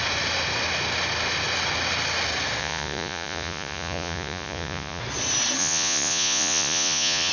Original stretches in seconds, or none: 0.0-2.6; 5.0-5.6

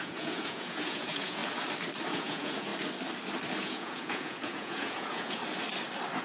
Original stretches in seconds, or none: 1.4-2.1; 2.7-3.6; 5.4-6.2

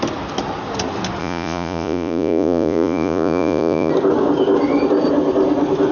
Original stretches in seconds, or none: 0.0-1.2; 3.9-5.9

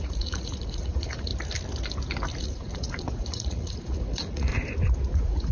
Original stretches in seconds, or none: 1.3-2.4; 4.5-5.1

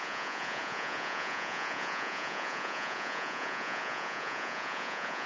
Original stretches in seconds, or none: none